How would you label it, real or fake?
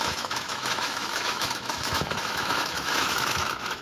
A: fake